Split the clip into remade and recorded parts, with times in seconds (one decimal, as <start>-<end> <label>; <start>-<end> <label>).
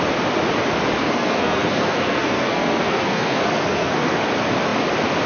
0.0-1.0 recorded; 1.0-4.2 remade; 4.2-5.3 recorded